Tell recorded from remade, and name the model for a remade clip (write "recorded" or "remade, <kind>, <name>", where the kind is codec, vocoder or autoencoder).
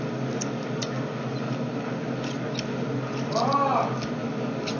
recorded